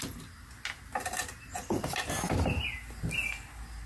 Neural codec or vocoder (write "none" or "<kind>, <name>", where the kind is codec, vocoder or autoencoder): none